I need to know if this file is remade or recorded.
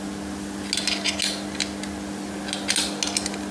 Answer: recorded